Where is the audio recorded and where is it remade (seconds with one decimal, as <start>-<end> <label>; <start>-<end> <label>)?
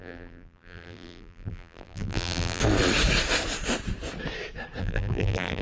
0.0-2.6 remade; 2.6-4.8 recorded; 4.8-5.6 remade